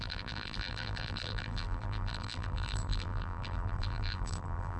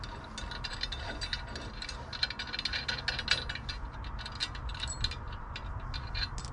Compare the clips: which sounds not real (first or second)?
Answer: first